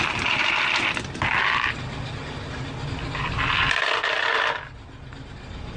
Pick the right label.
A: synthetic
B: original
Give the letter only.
B